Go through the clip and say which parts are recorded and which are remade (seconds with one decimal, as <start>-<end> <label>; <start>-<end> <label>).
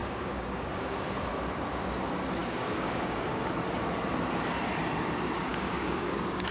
0.0-1.3 remade; 1.3-2.4 recorded; 2.4-3.5 remade; 3.5-5.5 recorded; 5.5-6.5 remade